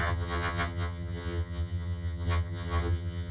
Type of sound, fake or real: fake